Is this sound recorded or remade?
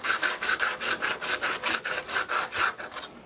recorded